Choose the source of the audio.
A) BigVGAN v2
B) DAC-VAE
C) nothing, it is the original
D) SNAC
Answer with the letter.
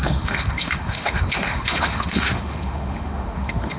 B